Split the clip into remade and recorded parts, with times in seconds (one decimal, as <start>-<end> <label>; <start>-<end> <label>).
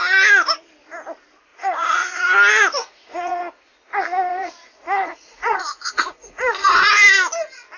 0.0-1.5 recorded; 1.5-2.2 remade; 2.2-2.8 recorded; 2.8-3.4 remade; 3.4-4.3 recorded; 4.3-6.9 remade; 6.9-7.8 recorded